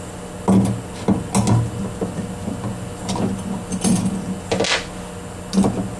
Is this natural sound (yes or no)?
yes